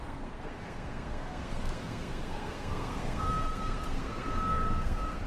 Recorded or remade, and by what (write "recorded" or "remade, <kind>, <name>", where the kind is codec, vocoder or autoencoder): remade, codec, SNAC